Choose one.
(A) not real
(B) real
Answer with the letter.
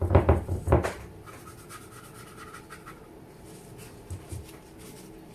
B